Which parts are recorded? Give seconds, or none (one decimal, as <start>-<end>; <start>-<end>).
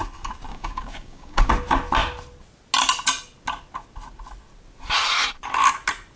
0.0-0.5; 1.5-6.2